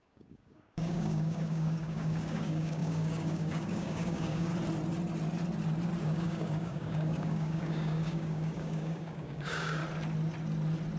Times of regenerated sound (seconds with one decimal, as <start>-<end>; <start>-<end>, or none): 0.0-4.5; 6.0-9.8